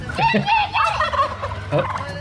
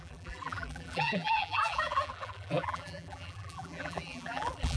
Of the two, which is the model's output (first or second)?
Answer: second